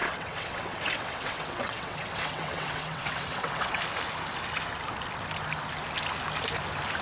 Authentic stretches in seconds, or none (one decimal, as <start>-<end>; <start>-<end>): 3.8-7.0